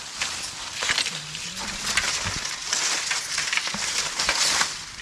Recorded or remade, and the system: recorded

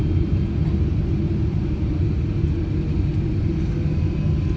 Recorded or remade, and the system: recorded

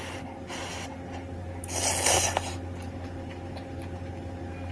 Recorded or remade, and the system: recorded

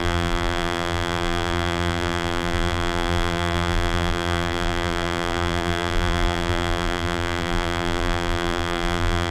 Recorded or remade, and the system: remade, vocoder, BigVGAN v2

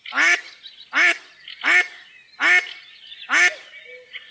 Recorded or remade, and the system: recorded